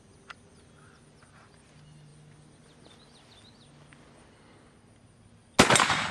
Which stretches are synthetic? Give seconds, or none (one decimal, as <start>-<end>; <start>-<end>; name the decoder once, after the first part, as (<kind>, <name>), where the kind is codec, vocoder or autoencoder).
none